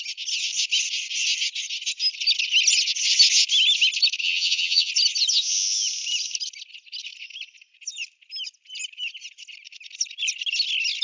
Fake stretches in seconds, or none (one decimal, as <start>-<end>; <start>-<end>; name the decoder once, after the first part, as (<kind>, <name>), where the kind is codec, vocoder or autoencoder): 4.2-4.9 (vocoder, HiFi-GAN)